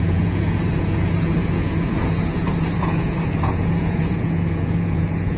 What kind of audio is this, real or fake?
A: fake